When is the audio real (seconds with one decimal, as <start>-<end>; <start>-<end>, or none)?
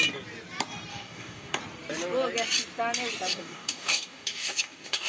0.0-0.9; 1.6-3.3